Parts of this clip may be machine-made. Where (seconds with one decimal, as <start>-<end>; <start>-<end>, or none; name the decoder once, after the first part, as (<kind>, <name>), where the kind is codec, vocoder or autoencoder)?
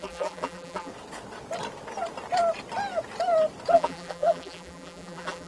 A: 0.0-0.9 (vocoder, BigVGAN v2); 3.7-5.5